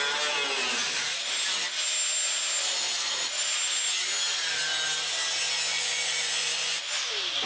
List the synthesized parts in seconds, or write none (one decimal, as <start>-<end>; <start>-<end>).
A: 5.7-6.8